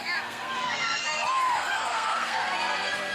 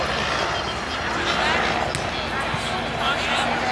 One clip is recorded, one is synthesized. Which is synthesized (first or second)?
first